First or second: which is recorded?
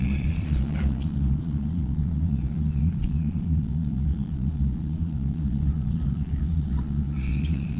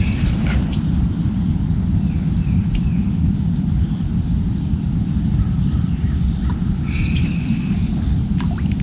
second